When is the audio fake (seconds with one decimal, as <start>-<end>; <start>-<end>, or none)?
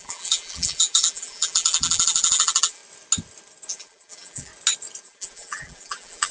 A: 0.0-2.8; 3.7-4.5; 5.0-6.3